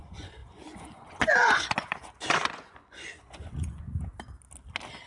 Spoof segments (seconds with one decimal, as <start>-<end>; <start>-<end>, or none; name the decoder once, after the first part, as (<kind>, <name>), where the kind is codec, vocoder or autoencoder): 0.0-4.1 (vocoder, Vocos)